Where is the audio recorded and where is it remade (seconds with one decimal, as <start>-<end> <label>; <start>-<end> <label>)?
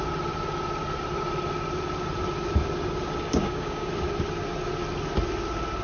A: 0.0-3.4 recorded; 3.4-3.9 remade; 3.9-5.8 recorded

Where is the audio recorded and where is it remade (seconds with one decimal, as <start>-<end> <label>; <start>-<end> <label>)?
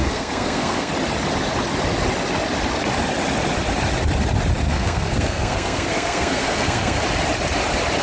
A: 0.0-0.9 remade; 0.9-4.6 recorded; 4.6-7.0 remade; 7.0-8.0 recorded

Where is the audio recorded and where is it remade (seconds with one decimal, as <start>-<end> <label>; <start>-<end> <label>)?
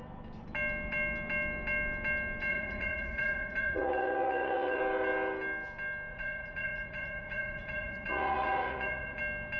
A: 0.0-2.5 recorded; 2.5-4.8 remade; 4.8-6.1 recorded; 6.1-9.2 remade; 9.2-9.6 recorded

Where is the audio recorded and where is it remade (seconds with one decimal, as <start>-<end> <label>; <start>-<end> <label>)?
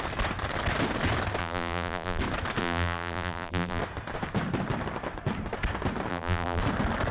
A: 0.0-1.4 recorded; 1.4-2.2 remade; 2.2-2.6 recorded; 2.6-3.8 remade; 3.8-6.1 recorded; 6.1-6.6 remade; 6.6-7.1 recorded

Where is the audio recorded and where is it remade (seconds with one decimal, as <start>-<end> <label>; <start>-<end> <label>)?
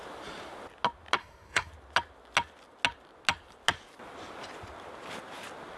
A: 0.0-1.2 recorded; 1.2-1.7 remade; 1.7-5.8 recorded